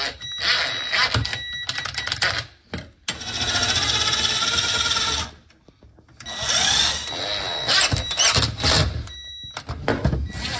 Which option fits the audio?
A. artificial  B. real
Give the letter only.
B